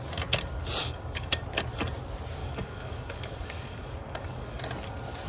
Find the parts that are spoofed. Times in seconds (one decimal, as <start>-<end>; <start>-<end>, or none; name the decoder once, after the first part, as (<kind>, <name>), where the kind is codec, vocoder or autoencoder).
0.8-1.4 (codec, DAC); 2.4-4.6